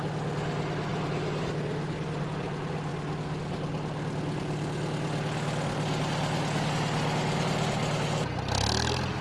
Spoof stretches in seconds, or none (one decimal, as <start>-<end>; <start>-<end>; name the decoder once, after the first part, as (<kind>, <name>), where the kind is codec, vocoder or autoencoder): 0.9-2.2 (vocoder, BigVGAN v2)